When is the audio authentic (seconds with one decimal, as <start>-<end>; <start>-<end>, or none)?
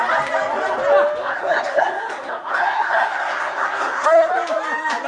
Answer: 0.0-1.2; 4.3-5.1